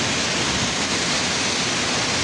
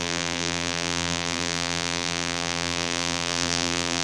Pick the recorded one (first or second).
first